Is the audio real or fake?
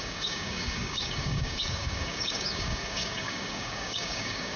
fake